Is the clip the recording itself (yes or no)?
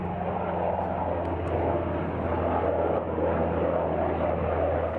yes